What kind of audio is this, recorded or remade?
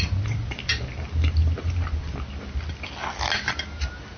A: recorded